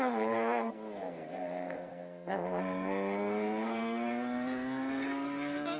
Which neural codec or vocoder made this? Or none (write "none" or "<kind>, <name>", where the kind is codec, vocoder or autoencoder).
codec, SNAC